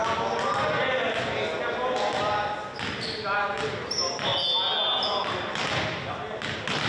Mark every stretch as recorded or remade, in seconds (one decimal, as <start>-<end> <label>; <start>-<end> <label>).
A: 0.0-6.9 recorded